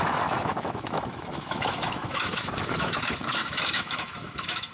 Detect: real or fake fake